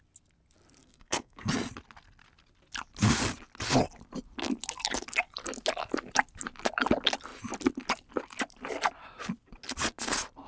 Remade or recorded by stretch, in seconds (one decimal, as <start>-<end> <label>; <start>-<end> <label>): 0.0-0.8 recorded; 0.8-1.5 remade; 1.5-10.5 recorded